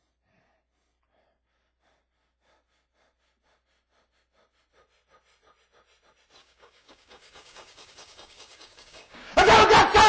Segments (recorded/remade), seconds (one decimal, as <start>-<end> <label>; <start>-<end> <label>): 0.0-6.4 recorded; 6.4-9.7 remade; 9.7-10.1 recorded